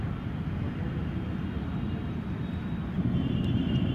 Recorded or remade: recorded